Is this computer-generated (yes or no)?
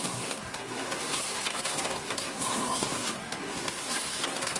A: yes